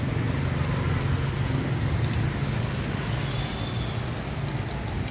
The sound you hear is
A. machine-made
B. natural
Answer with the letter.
B